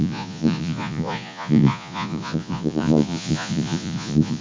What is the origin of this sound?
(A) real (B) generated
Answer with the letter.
B